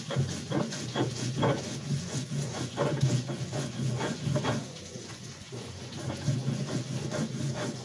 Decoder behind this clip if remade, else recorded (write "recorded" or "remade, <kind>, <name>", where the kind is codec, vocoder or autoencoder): remade, vocoder, Vocos